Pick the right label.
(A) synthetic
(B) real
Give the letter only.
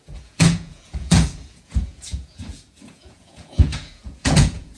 A